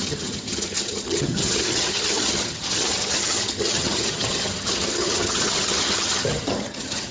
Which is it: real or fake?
fake